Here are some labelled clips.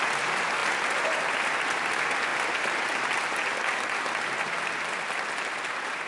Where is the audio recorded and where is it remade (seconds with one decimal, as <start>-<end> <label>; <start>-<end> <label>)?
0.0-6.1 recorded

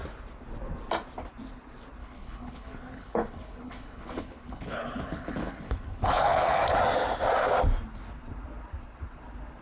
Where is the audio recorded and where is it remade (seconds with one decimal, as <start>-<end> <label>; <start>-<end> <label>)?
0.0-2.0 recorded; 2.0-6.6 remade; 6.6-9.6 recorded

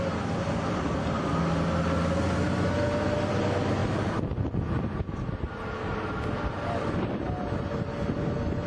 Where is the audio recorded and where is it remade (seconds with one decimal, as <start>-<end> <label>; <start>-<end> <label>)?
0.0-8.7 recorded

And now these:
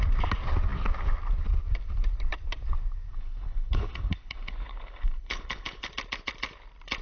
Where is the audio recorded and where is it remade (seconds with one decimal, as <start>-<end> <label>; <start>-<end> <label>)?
0.0-3.1 recorded; 3.1-5.9 remade; 5.9-7.0 recorded